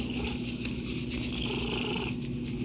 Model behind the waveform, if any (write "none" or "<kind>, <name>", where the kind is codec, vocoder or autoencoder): none